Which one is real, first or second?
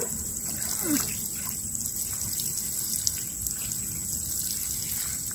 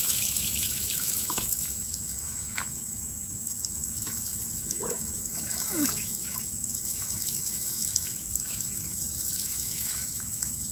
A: first